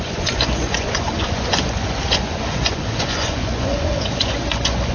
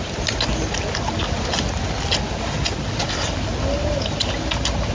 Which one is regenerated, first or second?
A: first